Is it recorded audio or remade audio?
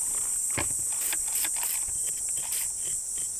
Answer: recorded